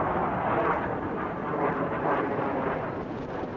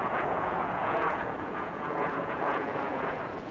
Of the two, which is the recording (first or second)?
first